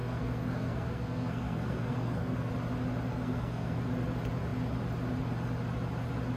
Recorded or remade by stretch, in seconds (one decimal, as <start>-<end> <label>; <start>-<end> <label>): 0.0-2.5 remade; 2.5-3.1 recorded; 3.1-3.8 remade; 3.8-6.4 recorded

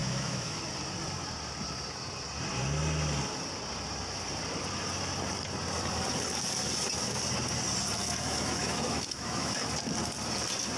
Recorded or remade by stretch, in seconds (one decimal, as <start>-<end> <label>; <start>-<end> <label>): 0.0-0.6 remade; 0.6-8.0 recorded; 8.0-9.7 remade; 9.7-10.8 recorded

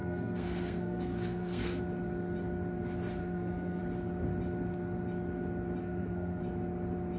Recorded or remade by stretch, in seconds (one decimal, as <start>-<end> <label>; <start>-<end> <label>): 0.0-1.8 remade; 1.8-3.2 recorded; 3.2-3.8 remade; 3.8-5.8 recorded; 5.8-6.4 remade; 6.4-7.2 recorded

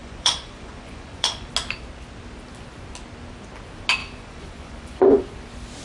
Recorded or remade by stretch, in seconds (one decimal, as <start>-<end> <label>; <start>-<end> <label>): 0.0-1.5 remade; 1.5-4.0 recorded; 4.0-5.2 remade; 5.2-5.8 recorded

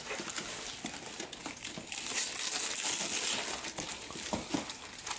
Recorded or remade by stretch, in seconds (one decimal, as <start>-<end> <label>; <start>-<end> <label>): 0.0-5.2 recorded

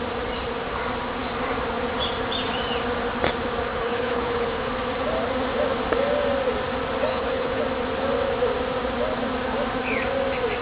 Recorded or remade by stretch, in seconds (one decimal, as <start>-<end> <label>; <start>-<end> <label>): 0.0-3.7 recorded; 3.7-4.7 remade; 4.7-7.1 recorded; 7.1-7.6 remade; 7.6-10.6 recorded